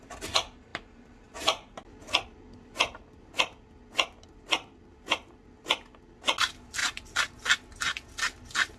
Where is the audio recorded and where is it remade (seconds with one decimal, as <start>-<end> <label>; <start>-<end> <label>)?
0.0-8.8 recorded